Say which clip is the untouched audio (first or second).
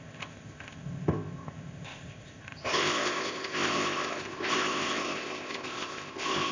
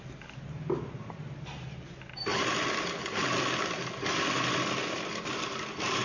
second